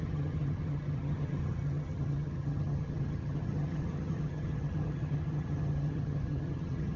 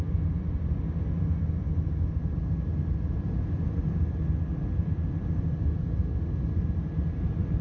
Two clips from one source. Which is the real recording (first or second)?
second